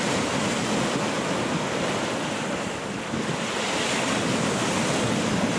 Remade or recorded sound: recorded